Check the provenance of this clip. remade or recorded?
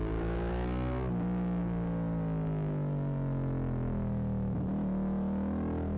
recorded